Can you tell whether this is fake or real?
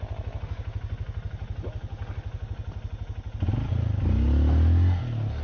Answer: real